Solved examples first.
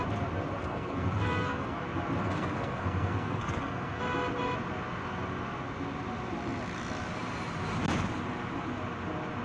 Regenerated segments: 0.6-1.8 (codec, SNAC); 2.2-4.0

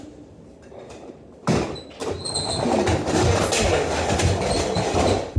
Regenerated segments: none

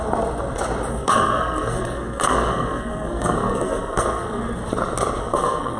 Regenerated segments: 0.9-4.4 (codec, SNAC); 5.2-5.8

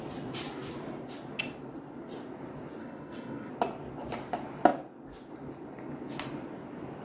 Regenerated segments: 2.8-3.5 (codec, SNAC)

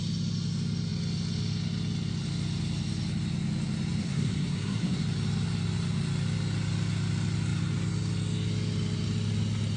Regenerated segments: 4.0-5.0 (codec, SNAC)

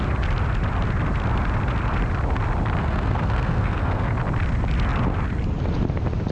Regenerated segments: 2.8-4.1 (codec, SNAC)

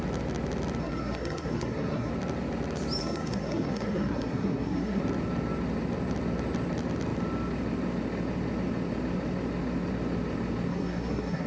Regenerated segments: 0.8-2.1 (codec, SNAC); 3.0-5.0; 10.7-11.5